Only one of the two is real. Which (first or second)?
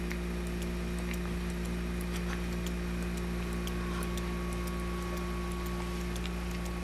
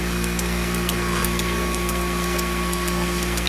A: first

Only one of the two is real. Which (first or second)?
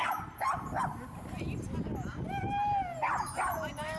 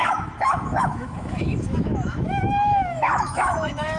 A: first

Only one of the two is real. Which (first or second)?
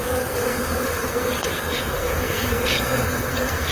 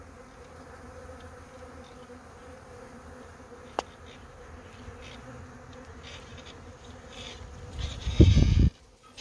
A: second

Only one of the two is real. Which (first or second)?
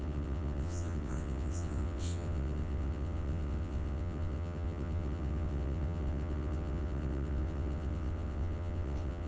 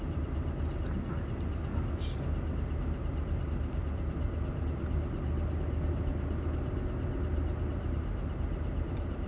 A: second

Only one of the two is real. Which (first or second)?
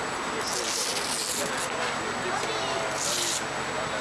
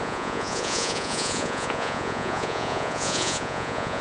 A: first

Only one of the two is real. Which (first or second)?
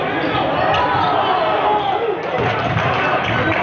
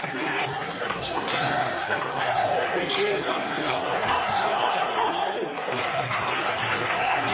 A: first